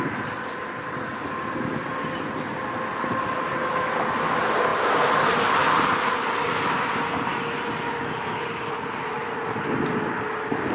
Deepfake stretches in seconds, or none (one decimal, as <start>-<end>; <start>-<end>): none